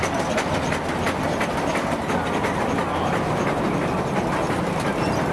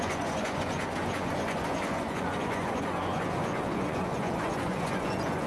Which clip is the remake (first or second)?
second